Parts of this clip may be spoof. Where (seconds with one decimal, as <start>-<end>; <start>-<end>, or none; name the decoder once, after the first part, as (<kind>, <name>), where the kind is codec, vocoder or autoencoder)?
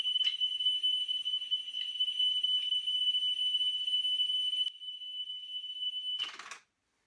none